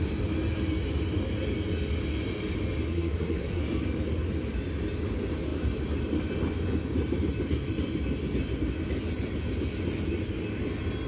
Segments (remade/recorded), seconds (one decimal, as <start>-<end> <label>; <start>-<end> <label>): 0.0-2.9 recorded; 2.9-3.6 remade; 3.6-11.1 recorded